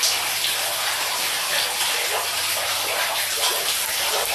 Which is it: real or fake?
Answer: fake